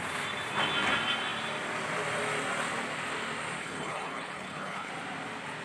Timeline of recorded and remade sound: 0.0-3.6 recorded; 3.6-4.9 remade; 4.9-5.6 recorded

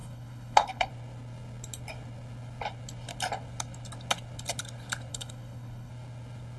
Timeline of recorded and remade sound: 0.0-0.9 remade; 0.9-5.1 recorded; 5.1-5.9 remade; 5.9-6.6 recorded